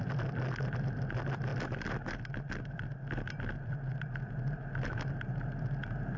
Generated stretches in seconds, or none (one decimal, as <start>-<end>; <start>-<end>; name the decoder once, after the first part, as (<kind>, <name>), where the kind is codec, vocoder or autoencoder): none